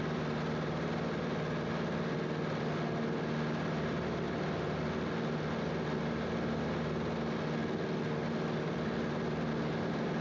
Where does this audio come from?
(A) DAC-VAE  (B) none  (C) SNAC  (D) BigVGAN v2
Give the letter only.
B